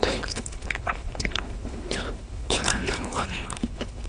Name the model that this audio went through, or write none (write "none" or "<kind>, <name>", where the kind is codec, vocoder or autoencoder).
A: codec, HILCodec